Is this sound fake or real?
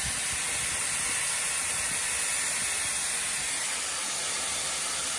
real